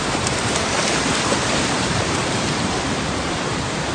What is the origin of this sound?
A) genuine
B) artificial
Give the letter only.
B